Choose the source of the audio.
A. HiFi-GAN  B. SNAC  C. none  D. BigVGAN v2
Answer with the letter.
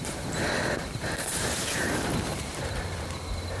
D